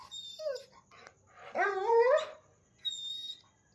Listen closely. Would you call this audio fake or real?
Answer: real